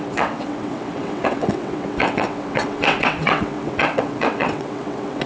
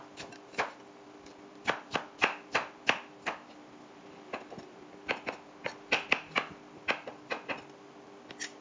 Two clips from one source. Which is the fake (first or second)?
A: first